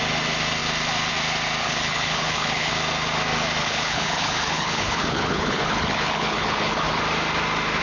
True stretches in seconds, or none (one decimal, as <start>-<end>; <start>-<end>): 0.0-1.6; 2.7-3.6; 7.0-7.8